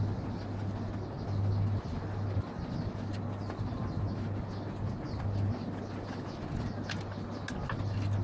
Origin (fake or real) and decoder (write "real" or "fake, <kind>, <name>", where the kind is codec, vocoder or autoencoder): real